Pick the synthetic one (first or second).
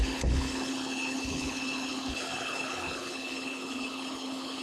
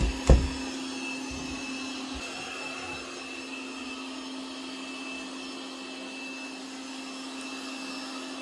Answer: first